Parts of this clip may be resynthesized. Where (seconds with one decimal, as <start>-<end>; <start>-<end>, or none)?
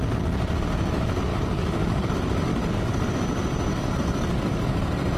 1.3-2.1; 2.5-3.1; 3.7-5.2